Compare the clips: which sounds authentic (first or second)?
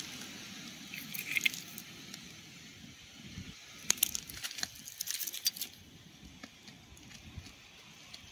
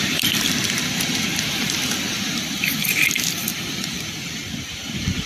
first